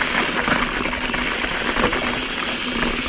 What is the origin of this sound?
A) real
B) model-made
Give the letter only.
A